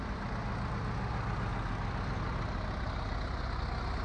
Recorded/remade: recorded